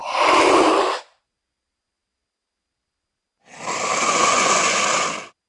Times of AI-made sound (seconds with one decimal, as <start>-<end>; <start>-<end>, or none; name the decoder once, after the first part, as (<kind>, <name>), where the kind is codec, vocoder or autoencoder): 4.0-4.8 (vocoder, Vocos)